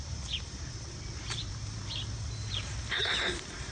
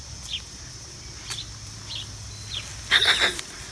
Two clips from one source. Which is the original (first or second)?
second